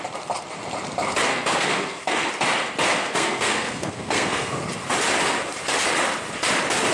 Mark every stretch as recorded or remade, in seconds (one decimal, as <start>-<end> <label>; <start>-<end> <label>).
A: 0.0-1.3 recorded; 1.3-2.3 remade; 2.3-3.0 recorded; 3.0-4.6 remade; 4.6-6.9 recorded